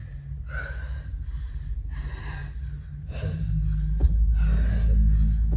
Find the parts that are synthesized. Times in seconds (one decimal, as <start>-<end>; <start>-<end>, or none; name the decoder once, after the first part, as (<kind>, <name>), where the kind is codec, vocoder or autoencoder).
0.6-2.4 (vocoder, BigVGAN v2)